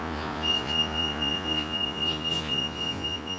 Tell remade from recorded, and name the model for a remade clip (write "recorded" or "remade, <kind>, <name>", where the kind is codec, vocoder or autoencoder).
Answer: remade, vocoder, Vocos